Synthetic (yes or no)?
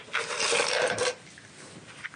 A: no